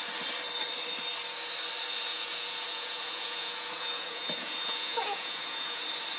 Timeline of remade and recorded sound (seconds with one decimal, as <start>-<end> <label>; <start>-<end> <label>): 0.0-2.1 recorded; 2.1-5.8 remade; 5.8-6.2 recorded